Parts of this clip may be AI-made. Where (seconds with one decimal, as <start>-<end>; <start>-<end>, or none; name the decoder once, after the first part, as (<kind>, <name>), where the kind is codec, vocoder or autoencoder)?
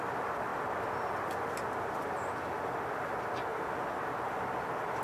0.0-0.5 (vocoder, BigVGAN v2); 2.7-3.5